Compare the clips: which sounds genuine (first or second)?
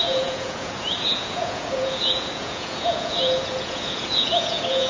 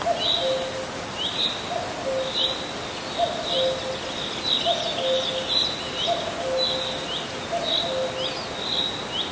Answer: second